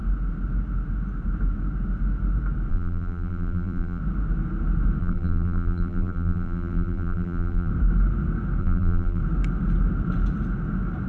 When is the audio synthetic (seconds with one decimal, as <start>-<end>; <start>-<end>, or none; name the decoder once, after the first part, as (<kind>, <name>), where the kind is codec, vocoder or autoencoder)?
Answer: 2.7-4.0 (vocoder, BigVGAN v2); 5.0-7.7; 8.6-9.2